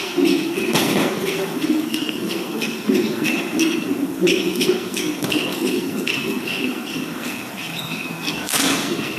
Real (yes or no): no